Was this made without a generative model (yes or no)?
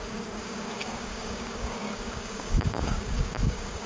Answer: no